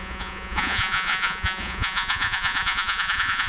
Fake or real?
fake